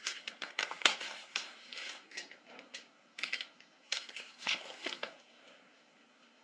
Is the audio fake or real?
fake